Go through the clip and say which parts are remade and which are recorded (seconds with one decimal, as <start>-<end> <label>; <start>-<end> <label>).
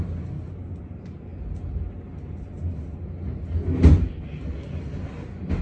0.0-5.6 recorded